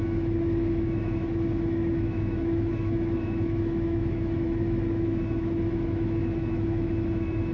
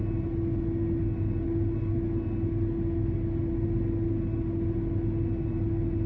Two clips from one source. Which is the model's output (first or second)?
first